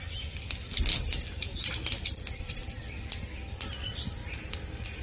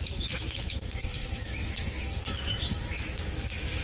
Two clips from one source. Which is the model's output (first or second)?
second